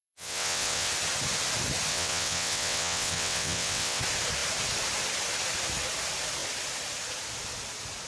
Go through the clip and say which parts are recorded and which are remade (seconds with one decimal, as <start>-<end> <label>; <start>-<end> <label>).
0.0-0.9 remade; 0.9-1.9 recorded; 1.9-4.0 remade; 4.0-8.1 recorded